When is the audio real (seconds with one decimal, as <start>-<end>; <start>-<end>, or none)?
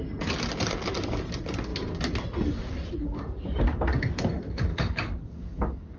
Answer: 0.0-4.7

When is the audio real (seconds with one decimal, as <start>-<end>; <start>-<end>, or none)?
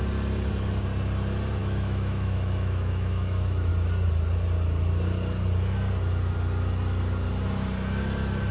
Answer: 0.0-1.6; 3.7-8.5